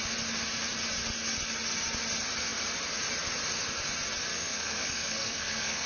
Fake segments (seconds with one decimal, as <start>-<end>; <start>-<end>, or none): 4.3-5.9